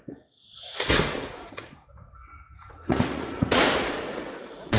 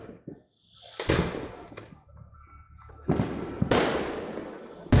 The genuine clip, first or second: second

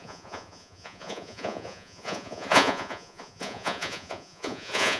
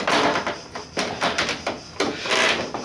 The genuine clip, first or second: second